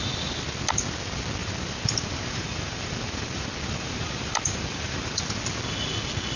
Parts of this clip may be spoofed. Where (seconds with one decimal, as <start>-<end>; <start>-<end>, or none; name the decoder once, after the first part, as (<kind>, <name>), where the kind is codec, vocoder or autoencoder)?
1.4-5.2 (vocoder, BigVGAN v2)

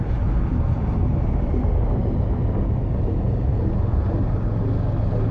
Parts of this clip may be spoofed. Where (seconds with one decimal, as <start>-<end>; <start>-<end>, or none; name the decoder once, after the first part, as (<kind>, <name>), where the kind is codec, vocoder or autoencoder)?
0.0-2.0 (vocoder, BigVGAN v2)

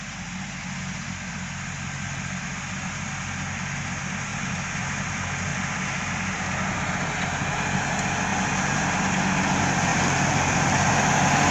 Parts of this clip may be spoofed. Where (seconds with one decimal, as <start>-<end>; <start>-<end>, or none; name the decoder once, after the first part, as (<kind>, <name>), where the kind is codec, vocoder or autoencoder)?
4.3-5.1 (vocoder, BigVGAN v2); 9.9-10.9